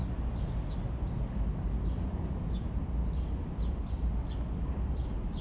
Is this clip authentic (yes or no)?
yes